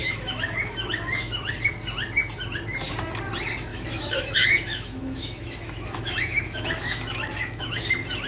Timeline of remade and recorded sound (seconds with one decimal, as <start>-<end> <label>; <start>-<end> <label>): 0.0-1.5 remade; 1.5-3.7 recorded; 3.7-7.8 remade; 7.8-8.3 recorded